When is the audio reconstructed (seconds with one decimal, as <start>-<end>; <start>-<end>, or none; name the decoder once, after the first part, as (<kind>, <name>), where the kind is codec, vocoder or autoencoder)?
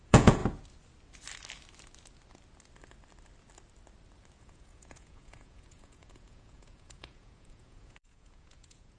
0.0-0.4 (vocoder, Vocos); 4.4-9.0